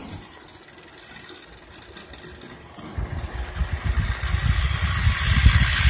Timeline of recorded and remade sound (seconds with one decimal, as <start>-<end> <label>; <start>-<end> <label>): 0.0-5.9 recorded

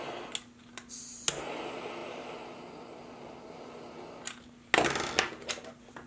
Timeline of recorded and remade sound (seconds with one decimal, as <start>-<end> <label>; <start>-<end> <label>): 0.0-6.1 recorded

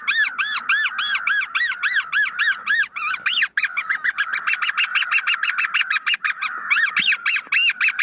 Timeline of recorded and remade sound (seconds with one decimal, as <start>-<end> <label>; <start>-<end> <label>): 0.0-8.0 recorded

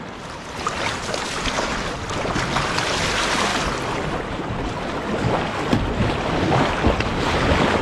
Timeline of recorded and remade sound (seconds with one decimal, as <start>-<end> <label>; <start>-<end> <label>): 0.0-7.8 recorded

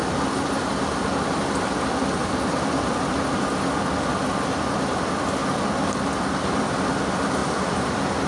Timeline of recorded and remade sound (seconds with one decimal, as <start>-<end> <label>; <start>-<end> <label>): 0.0-0.8 remade; 0.8-2.2 recorded; 2.2-2.8 remade; 2.8-7.4 recorded; 7.4-8.3 remade

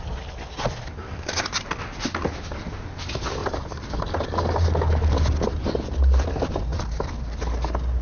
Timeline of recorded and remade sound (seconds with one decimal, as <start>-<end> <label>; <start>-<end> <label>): 0.0-1.0 recorded; 1.0-1.7 remade; 1.7-3.4 recorded; 3.4-4.2 remade; 4.2-8.0 recorded

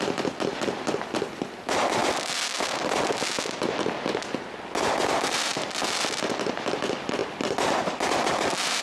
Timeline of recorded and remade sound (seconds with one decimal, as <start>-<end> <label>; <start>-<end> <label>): 0.0-0.5 remade; 0.5-1.6 recorded; 1.6-2.0 remade; 2.0-5.2 recorded; 5.2-8.8 remade

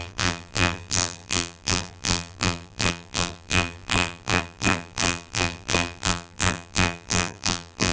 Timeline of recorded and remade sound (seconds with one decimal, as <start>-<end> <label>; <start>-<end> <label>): 0.0-7.9 remade